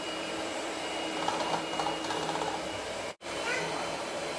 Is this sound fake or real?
fake